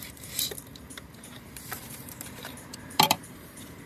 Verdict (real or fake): fake